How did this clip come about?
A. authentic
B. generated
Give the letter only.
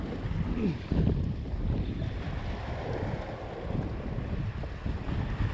A